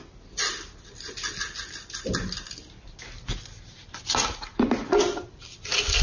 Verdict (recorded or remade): recorded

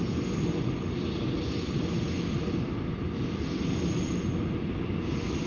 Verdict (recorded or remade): recorded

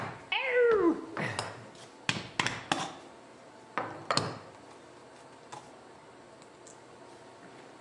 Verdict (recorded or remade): recorded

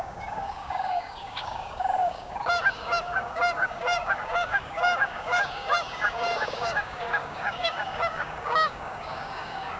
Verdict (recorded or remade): remade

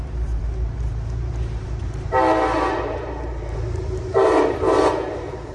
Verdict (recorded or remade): remade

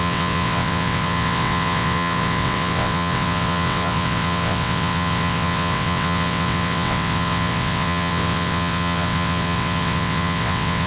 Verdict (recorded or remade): remade